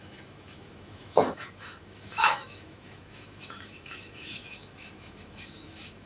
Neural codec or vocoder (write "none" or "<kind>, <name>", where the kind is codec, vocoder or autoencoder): autoencoder, DAC-VAE